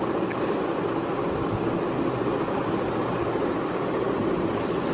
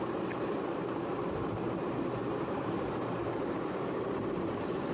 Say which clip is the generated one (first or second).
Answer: second